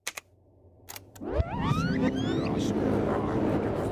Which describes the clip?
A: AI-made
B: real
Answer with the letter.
B